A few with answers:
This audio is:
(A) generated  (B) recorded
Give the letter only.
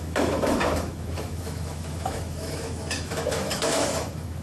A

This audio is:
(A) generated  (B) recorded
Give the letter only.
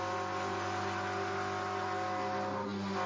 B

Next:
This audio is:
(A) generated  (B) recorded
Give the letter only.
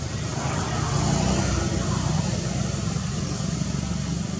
B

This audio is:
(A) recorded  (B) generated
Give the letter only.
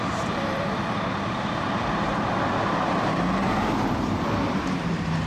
B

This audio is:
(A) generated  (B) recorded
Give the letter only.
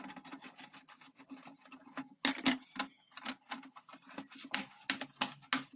B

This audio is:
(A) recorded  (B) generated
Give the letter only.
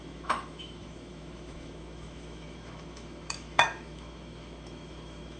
B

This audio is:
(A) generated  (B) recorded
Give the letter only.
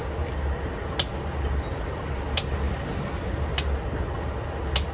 B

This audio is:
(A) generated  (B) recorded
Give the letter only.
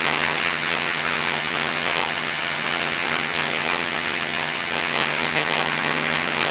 A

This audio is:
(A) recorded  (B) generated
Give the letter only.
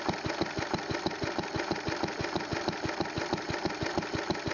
A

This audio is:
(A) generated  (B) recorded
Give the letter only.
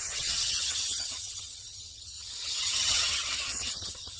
A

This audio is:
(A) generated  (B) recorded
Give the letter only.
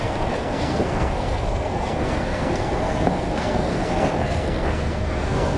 A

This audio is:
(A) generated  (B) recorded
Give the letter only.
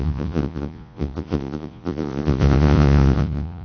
A